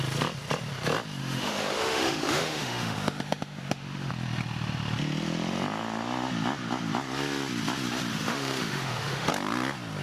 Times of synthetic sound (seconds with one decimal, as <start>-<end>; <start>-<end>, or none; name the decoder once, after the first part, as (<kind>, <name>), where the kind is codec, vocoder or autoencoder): 1.2-4.1 (autoencoder, DAC-VAE); 8.1-9.3